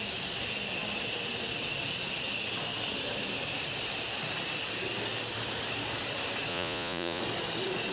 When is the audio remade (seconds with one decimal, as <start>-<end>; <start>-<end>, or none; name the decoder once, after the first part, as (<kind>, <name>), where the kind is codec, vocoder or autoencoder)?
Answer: 6.5-7.2 (vocoder, Vocos)